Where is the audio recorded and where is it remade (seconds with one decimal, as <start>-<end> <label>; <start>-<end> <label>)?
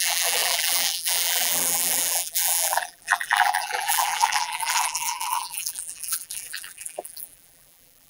0.0-8.1 remade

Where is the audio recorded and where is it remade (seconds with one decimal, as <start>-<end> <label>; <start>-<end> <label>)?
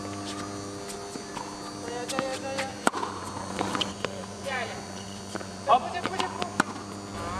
0.0-2.7 recorded; 2.7-6.4 remade; 6.4-7.4 recorded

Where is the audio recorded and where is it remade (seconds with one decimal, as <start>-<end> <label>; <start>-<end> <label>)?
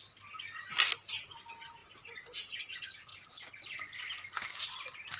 0.0-1.8 recorded; 1.8-2.7 remade; 2.7-5.2 recorded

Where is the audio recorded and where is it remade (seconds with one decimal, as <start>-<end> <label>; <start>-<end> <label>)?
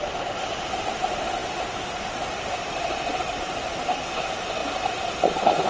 0.0-5.7 recorded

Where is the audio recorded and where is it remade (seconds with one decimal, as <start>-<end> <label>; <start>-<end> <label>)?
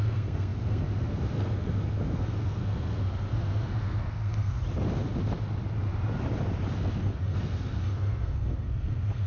0.0-4.6 remade; 4.6-6.7 recorded; 6.7-9.3 remade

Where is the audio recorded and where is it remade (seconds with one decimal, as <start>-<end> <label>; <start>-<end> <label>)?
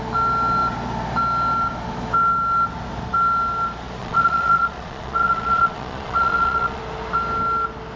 0.0-4.0 recorded; 4.0-6.8 remade; 6.8-8.0 recorded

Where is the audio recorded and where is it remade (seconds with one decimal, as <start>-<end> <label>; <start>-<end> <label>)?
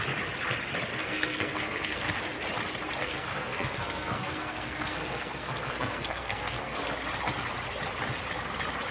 0.0-0.9 recorded; 0.9-2.2 remade; 2.2-3.0 recorded; 3.0-6.8 remade; 6.8-8.9 recorded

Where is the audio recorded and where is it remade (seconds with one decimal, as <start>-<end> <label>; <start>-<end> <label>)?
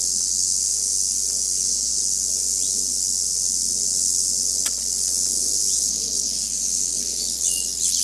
0.0-8.0 recorded